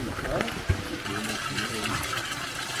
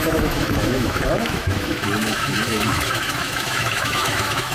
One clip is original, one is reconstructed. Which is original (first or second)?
first